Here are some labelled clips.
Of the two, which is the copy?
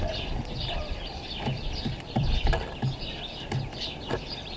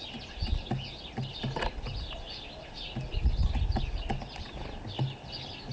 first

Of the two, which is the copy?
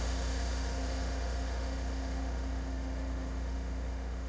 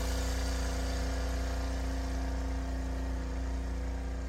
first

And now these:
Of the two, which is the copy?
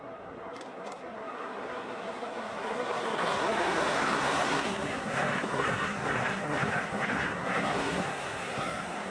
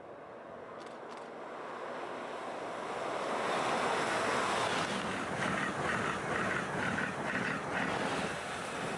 first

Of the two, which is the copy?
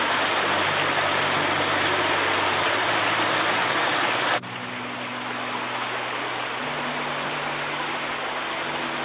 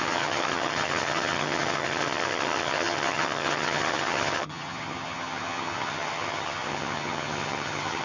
second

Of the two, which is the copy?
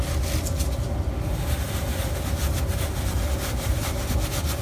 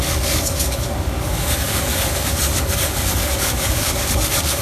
second